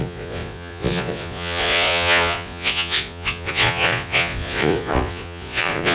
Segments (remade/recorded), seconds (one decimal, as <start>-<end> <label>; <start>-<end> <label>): 0.0-5.9 remade